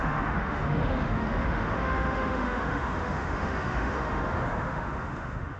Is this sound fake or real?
fake